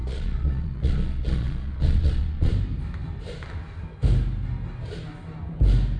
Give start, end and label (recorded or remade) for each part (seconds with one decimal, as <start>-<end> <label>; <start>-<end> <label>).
0.0-2.5 remade; 2.5-6.0 recorded